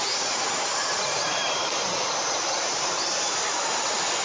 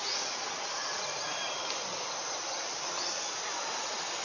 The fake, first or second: first